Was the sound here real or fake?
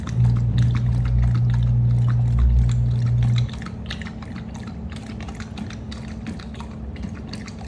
real